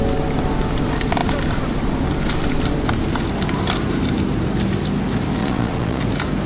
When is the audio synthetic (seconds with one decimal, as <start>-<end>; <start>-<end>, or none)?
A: 5.4-6.0